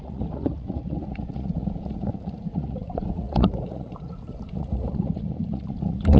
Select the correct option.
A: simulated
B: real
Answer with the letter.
A